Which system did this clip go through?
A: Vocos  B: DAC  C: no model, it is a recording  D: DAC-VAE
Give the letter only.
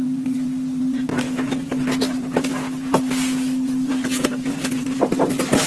C